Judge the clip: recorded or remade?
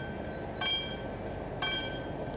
recorded